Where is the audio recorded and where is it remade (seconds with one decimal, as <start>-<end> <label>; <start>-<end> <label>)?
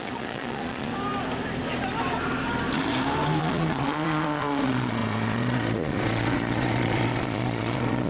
0.0-0.9 remade; 0.9-3.4 recorded; 3.4-8.1 remade